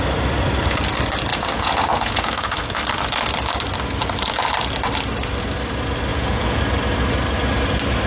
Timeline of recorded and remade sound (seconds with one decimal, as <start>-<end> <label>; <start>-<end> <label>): 0.0-1.3 recorded; 1.3-2.8 remade; 2.8-6.1 recorded; 6.1-6.6 remade; 6.6-8.1 recorded